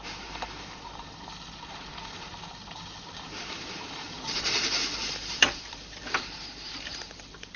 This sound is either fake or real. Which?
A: fake